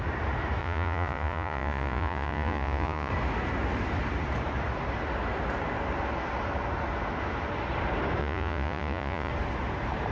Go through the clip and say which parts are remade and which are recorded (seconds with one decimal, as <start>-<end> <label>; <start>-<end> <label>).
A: 0.0-0.6 recorded; 0.6-3.1 remade; 3.1-8.2 recorded; 8.2-9.3 remade; 9.3-10.1 recorded